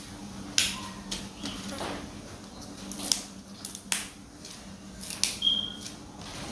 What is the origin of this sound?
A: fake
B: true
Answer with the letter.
B